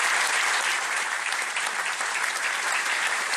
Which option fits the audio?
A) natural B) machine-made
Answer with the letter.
B